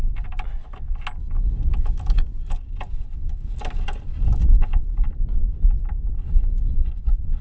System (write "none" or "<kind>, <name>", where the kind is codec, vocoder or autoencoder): none